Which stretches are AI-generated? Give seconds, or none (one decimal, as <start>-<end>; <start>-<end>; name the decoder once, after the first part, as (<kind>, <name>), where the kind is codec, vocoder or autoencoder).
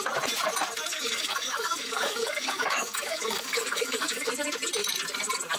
0.9-4.3 (codec, DAC)